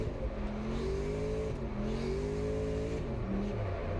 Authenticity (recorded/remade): recorded